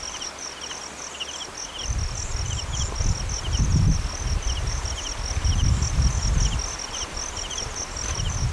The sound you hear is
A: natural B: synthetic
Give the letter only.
A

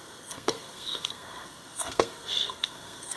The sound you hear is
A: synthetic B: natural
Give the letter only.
A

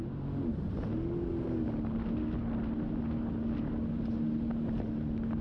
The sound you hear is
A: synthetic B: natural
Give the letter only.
B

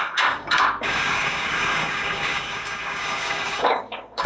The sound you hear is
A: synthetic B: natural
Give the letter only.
A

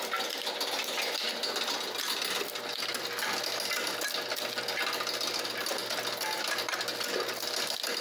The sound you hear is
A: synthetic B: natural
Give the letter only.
B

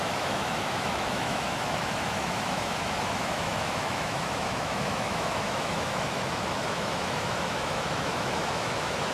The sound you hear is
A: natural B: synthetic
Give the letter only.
B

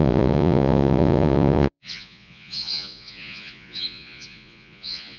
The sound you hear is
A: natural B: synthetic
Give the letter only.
B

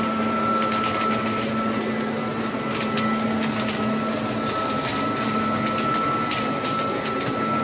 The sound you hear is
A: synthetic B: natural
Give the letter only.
B